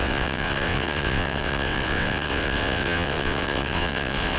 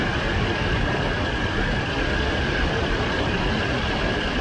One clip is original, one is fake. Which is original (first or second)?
second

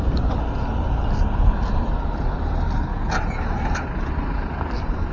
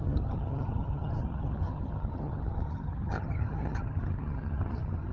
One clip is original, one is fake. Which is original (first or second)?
first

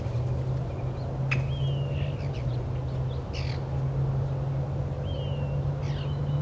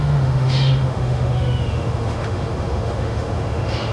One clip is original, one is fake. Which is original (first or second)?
first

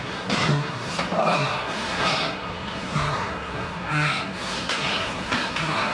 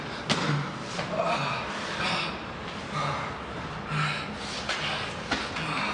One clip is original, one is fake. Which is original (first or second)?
second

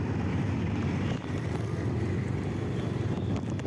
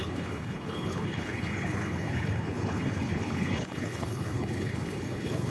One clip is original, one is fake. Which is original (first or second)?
first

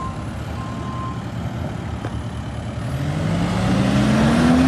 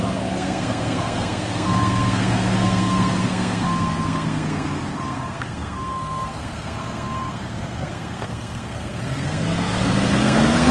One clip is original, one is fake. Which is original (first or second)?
first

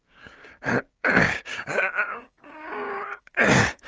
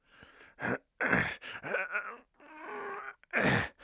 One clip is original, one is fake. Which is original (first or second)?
second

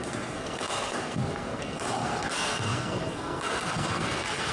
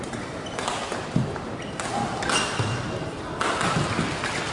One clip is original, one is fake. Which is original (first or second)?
second